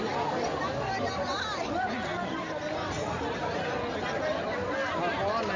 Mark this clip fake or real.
real